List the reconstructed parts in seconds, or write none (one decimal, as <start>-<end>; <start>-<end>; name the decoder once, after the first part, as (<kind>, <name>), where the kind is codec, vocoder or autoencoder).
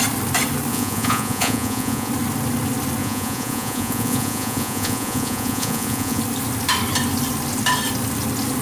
0.7-2.1 (vocoder, Vocos); 3.0-6.2